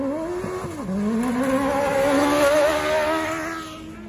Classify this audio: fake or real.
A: real